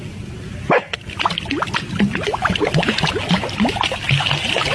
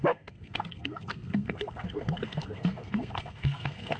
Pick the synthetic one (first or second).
second